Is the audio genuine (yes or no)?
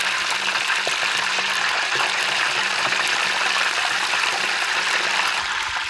yes